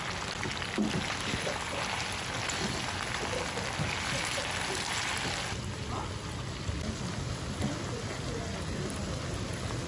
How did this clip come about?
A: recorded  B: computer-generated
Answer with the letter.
A